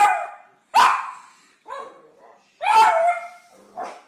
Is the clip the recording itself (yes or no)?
no